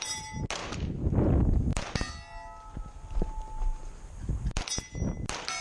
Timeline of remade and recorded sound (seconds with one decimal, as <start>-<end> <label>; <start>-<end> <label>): 0.0-5.6 recorded

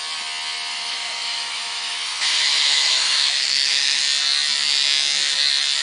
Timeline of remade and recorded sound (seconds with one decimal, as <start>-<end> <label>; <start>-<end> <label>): 0.0-0.7 recorded; 0.7-4.0 remade; 4.0-5.8 recorded

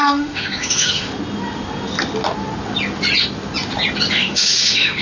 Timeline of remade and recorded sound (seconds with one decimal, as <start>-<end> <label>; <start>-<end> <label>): 0.0-1.1 remade; 1.1-4.1 recorded; 4.1-5.0 remade